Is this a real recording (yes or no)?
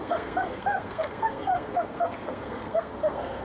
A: no